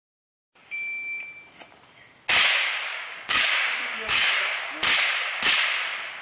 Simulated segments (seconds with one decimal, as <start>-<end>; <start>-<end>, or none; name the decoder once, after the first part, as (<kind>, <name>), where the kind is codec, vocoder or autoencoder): 2.9-4.3 (codec, DAC)